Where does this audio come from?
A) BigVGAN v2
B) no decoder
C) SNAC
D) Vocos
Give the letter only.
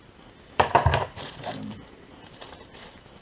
A